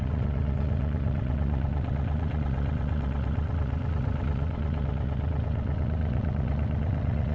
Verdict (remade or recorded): remade